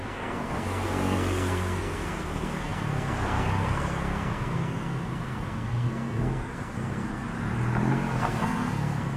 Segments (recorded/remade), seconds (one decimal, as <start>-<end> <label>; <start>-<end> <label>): 0.0-7.3 remade; 7.3-7.9 recorded; 7.9-9.2 remade